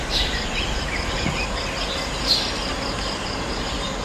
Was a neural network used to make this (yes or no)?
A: no